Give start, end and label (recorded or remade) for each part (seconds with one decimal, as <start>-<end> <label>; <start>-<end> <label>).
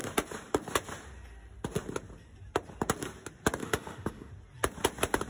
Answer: 0.0-3.6 recorded; 3.6-4.3 remade; 4.3-5.3 recorded